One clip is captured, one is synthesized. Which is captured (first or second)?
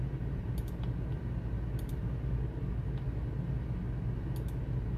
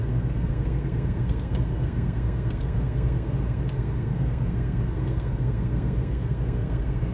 first